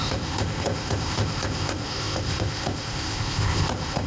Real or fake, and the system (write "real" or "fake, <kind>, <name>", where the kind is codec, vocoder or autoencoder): fake, codec, ZipCodec